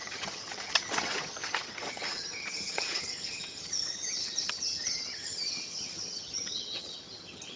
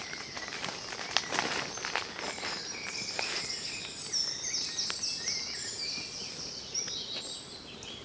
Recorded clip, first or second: second